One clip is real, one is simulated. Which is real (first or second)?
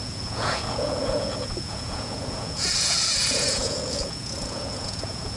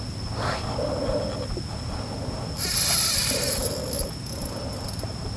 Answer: second